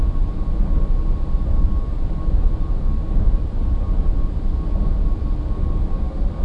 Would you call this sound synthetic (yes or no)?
no